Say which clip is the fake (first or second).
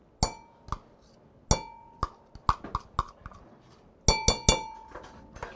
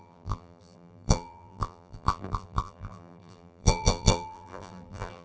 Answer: second